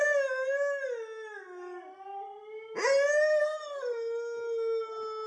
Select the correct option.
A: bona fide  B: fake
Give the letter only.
A